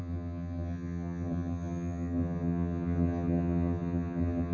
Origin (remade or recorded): remade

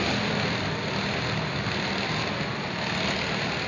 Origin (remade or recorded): recorded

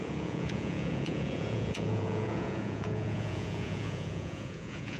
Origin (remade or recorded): remade